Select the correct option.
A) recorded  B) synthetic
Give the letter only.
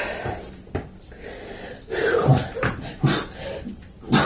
A